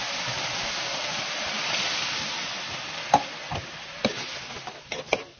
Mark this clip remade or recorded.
recorded